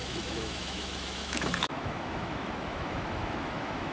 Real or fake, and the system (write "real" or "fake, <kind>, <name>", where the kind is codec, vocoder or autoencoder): fake, autoencoder, DAC-VAE